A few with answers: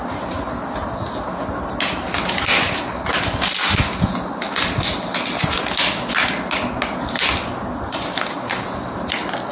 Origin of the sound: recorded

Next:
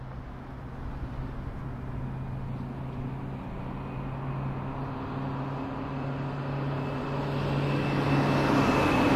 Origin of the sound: recorded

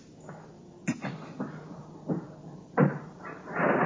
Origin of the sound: recorded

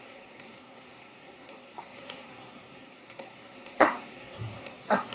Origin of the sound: remade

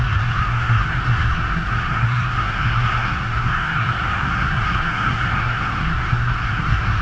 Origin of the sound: remade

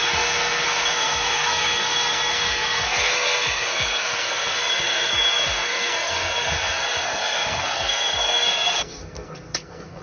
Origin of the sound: remade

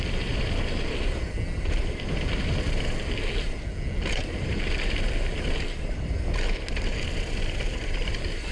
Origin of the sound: recorded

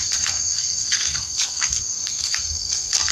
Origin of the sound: remade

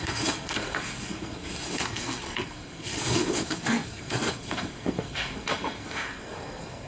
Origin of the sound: remade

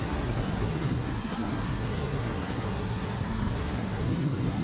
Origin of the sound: remade